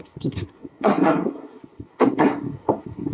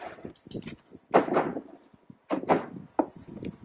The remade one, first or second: first